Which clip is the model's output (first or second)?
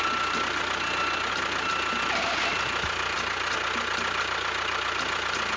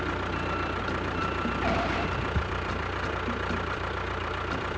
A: second